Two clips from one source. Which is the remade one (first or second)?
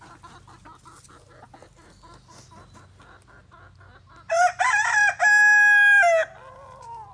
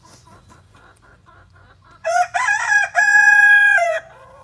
second